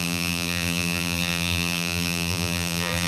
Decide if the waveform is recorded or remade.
remade